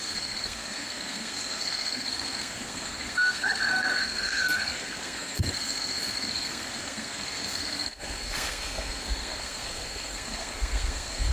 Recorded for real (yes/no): no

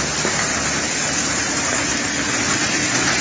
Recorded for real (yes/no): yes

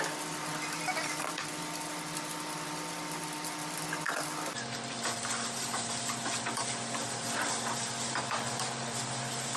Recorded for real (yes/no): yes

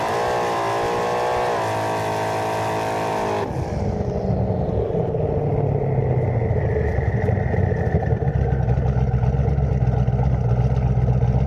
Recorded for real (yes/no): yes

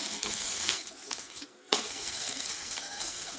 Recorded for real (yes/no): no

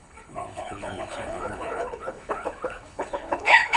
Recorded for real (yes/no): no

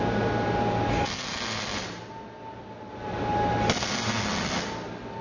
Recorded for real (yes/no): yes